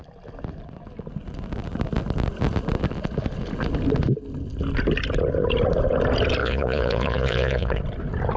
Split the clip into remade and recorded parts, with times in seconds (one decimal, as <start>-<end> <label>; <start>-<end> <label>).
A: 0.0-6.4 recorded; 6.4-7.8 remade; 7.8-8.4 recorded